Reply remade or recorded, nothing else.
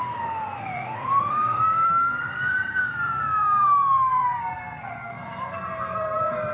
remade